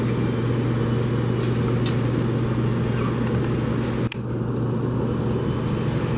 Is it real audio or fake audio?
real